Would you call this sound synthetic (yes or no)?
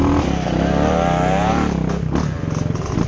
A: no